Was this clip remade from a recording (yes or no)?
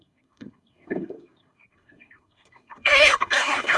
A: yes